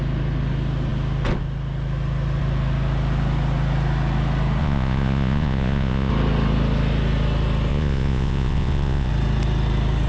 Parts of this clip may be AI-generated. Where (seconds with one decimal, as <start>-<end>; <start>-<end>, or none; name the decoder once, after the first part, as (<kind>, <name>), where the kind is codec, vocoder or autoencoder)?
4.6-6.1 (vocoder, Vocos); 7.7-9.1